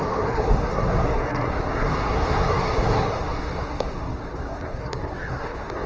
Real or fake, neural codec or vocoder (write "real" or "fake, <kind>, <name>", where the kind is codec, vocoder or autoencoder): fake, codec, SNAC